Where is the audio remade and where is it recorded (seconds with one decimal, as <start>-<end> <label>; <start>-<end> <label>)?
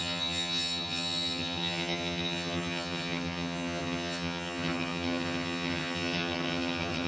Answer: 0.0-7.1 remade